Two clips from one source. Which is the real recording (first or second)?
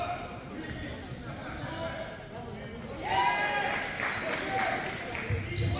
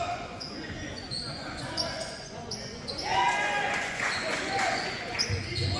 first